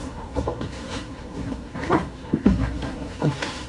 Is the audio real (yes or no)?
no